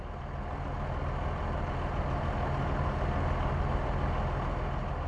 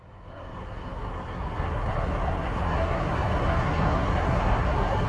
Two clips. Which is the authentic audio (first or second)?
first